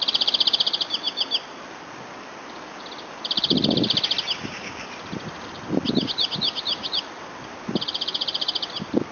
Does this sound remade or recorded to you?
remade